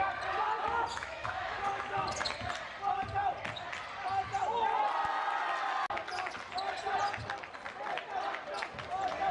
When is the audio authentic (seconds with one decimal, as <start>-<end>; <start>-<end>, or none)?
0.0-0.9; 1.6-9.3